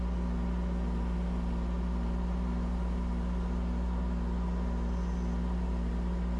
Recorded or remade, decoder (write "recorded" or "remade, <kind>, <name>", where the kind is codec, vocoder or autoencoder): recorded